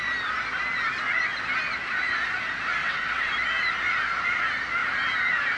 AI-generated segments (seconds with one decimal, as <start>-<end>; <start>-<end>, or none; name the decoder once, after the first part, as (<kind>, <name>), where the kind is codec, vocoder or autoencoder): 2.8-3.3 (vocoder, WaveNeXt)